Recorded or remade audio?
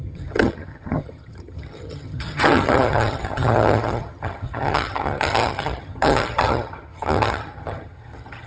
remade